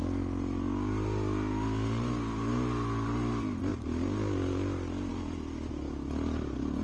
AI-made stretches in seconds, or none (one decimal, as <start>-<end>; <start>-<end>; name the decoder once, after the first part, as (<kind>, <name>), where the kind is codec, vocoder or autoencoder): none